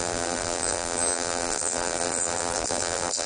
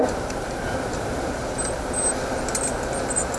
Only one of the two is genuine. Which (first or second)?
second